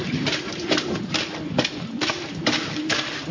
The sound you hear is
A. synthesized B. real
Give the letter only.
B